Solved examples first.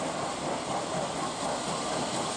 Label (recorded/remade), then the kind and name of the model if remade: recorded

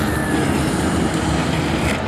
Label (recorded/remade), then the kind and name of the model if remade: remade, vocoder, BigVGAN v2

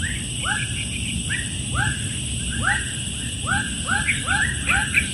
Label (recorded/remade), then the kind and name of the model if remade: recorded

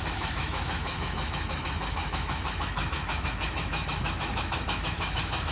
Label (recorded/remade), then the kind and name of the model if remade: remade, autoencoder, DAC-VAE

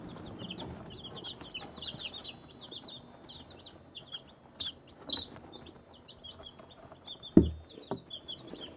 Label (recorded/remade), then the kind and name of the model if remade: recorded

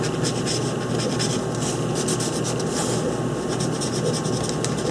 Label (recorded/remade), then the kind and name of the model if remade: remade, vocoder, BigVGAN v2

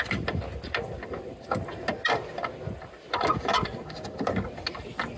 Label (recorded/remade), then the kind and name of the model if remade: recorded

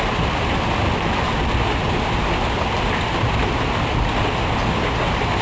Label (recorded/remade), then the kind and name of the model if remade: recorded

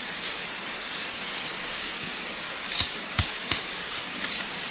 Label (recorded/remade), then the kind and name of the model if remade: remade, codec, DAC